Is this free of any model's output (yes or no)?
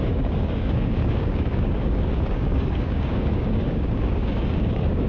no